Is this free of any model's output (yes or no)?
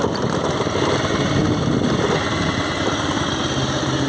yes